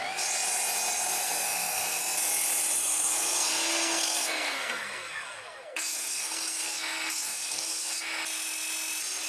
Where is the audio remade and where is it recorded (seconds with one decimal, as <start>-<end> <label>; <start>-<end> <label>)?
0.0-1.2 recorded; 1.2-2.0 remade; 2.0-2.8 recorded; 2.8-8.0 remade; 8.0-9.3 recorded